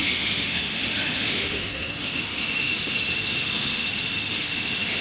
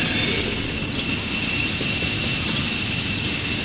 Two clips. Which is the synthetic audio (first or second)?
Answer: first